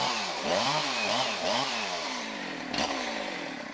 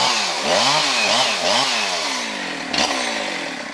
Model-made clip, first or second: first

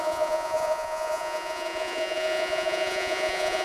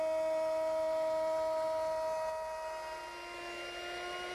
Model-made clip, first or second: first